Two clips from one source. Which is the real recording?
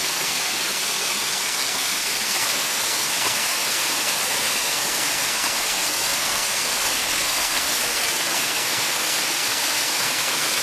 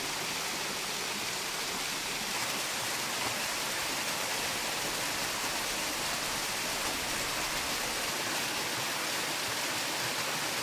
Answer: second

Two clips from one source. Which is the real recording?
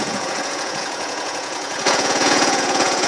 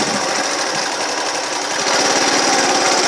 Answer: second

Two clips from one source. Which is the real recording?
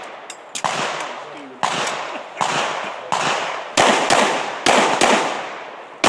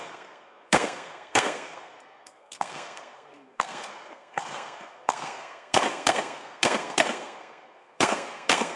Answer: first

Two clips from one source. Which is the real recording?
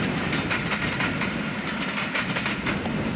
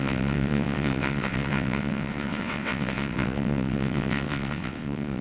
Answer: first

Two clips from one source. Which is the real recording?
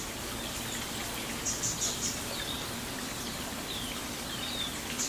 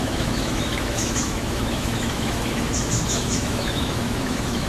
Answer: first